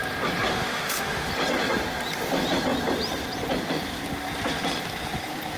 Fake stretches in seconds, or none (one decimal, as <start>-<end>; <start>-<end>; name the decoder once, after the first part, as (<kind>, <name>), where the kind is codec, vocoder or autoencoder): 0.5-1.3 (autoencoder, DAC-VAE)